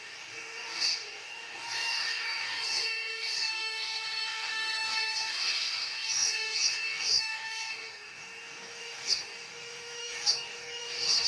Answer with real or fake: fake